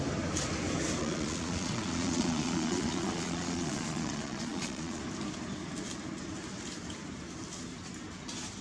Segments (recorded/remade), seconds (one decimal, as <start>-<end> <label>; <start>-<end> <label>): 0.0-1.0 recorded; 1.0-5.0 remade; 5.0-8.6 recorded